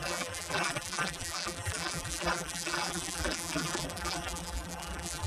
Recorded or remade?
remade